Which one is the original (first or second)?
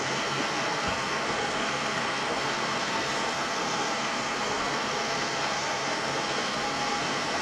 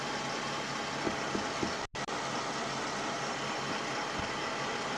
second